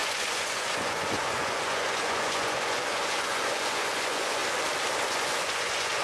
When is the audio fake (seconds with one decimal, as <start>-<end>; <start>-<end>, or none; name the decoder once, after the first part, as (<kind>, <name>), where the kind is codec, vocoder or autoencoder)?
0.0-4.4 (vocoder, Vocos); 5.1-6.0